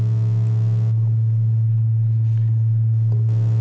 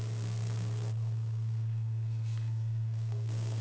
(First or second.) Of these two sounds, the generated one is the second